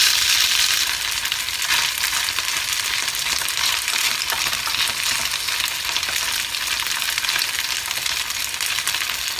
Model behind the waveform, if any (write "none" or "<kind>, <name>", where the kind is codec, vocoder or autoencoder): none